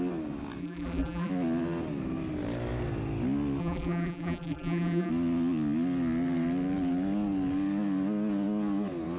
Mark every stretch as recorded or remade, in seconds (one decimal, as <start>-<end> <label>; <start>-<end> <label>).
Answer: 0.0-0.6 recorded; 0.6-1.3 remade; 1.3-3.6 recorded; 3.6-5.1 remade; 5.1-9.2 recorded